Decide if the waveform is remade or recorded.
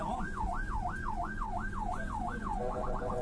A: remade